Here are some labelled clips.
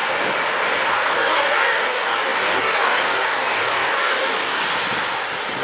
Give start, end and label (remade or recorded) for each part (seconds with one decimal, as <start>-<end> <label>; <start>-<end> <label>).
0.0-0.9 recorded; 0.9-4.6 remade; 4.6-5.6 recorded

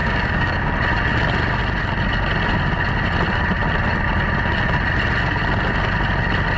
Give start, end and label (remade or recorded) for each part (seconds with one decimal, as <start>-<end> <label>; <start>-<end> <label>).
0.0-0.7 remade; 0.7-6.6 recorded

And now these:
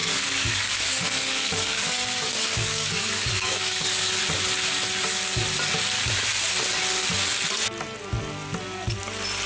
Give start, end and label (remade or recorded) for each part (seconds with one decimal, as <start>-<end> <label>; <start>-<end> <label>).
0.0-4.2 remade; 4.2-9.5 recorded

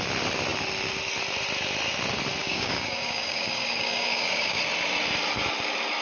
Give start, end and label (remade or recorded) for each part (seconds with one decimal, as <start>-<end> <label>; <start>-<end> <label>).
0.0-2.4 recorded; 2.4-4.6 remade; 4.6-6.0 recorded

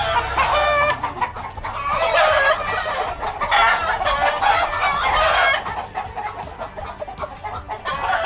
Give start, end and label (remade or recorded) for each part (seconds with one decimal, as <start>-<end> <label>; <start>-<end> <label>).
0.0-0.5 recorded; 0.5-1.2 remade; 1.2-8.3 recorded

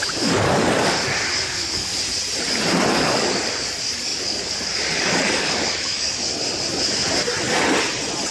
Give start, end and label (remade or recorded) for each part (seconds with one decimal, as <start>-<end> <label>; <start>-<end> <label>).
0.0-1.9 remade; 1.9-2.9 recorded; 2.9-6.3 remade; 6.3-8.3 recorded

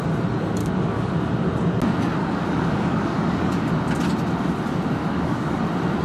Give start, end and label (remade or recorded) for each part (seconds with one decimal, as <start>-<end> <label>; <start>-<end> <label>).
0.0-0.6 recorded; 0.6-1.1 remade; 1.1-2.2 recorded; 2.2-3.6 remade; 3.6-5.0 recorded; 5.0-5.6 remade; 5.6-6.0 recorded

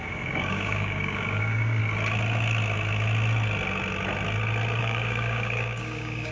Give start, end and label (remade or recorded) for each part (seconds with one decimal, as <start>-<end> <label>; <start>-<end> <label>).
0.0-1.8 remade; 1.8-4.8 recorded; 4.8-6.3 remade